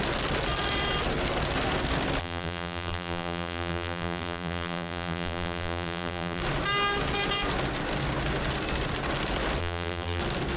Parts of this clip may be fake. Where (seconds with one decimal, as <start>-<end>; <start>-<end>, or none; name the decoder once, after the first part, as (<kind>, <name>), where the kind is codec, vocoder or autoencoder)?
2.2-6.4 (vocoder, BigVGAN v2); 9.6-10.2